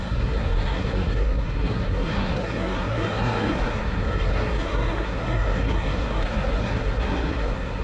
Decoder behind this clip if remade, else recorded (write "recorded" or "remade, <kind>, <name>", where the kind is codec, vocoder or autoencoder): remade, codec, SNAC